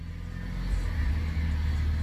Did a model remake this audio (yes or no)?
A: no